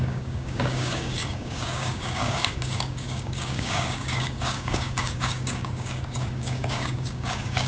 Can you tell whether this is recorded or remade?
remade